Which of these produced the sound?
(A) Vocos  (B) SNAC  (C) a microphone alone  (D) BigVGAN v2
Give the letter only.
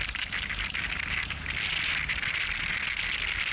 C